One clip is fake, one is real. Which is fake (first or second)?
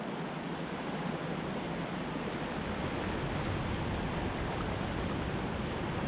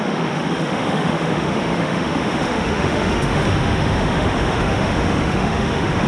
second